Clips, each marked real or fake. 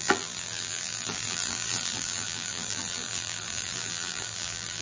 fake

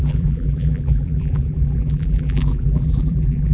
fake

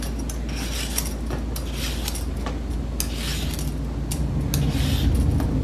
real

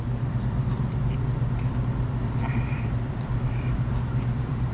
fake